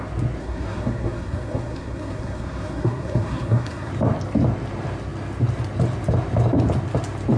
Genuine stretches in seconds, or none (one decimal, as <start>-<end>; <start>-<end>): 0.0-0.4; 3.9-7.4